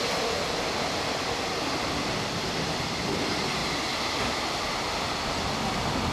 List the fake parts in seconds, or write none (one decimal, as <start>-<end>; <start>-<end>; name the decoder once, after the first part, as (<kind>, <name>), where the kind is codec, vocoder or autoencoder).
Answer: 0.0-3.6 (vocoder, BigVGAN v2); 4.2-6.1